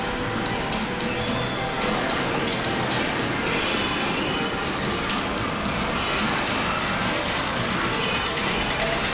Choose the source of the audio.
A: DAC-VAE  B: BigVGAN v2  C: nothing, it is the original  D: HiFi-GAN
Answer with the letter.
C